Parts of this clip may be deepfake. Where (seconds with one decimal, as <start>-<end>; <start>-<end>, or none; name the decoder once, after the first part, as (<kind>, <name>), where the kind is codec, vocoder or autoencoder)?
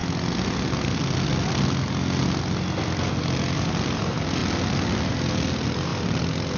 4.4-5.1 (vocoder, BigVGAN v2); 5.9-6.6